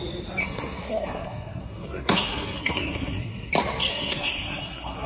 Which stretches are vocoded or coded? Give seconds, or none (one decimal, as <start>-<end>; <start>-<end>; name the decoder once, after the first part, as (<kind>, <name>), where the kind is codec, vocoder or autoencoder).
0.4-3.5 (codec, SNAC); 3.9-5.1